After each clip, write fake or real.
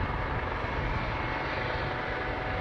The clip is real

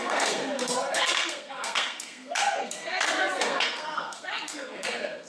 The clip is fake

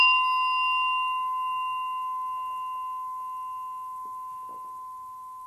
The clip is real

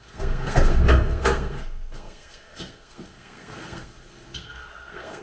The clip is fake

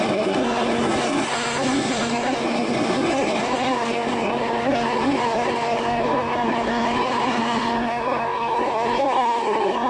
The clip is fake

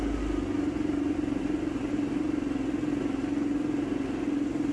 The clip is real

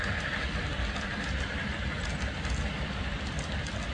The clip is real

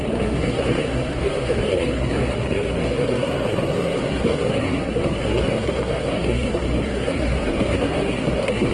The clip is fake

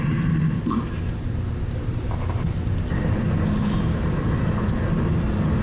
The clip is real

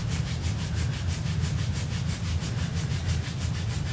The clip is real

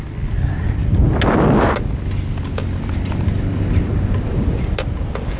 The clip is real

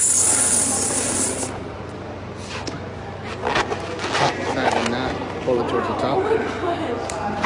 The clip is real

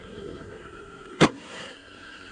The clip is fake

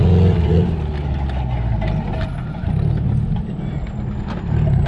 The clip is real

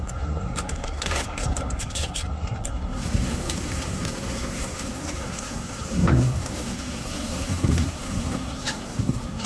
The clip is fake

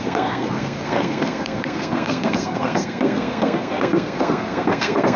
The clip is fake